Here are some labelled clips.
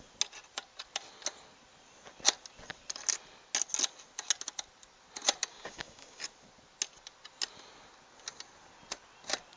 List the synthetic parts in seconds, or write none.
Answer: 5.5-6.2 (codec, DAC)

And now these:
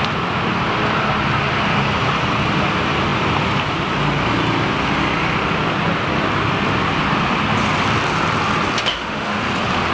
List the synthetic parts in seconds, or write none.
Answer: 8.9-9.4 (autoencoder, DAC-VAE)

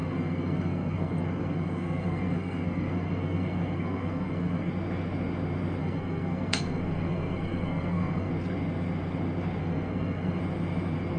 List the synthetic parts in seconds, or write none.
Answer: 0.0-4.7 (codec, SNAC); 5.8-8.3; 9.6-10.4

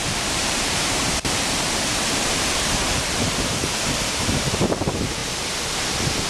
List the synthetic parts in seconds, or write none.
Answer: 0.0-5.2 (vocoder, BigVGAN v2)

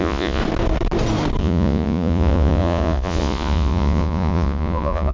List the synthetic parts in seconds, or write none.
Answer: 0.0-0.4 (vocoder, Vocos); 1.4-5.1

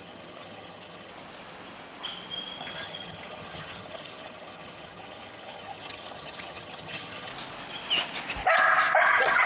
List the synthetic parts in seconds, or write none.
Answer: 0.0-1.1 (vocoder, HiFi-GAN); 2.6-7.3; 9.1-9.5

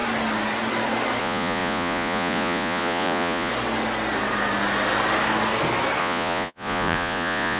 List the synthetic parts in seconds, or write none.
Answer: 1.2-3.5 (vocoder, Vocos); 6.0-7.6